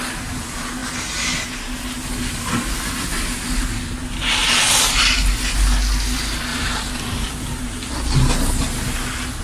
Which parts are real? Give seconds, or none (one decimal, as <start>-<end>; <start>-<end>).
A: 0.0-4.4; 5.0-6.5; 7.9-9.4